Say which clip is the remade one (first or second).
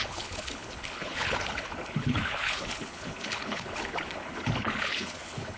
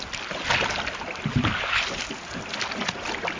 first